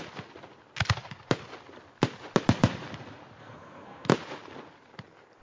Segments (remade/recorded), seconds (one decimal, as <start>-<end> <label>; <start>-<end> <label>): 0.0-3.4 recorded; 3.4-4.1 remade; 4.1-5.4 recorded